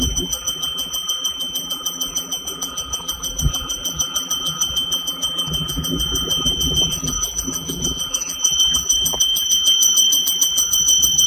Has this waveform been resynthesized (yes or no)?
yes